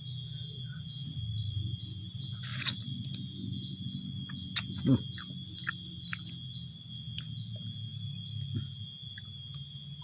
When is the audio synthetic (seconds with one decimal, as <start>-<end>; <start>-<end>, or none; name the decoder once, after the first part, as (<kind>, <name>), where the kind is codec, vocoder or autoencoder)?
none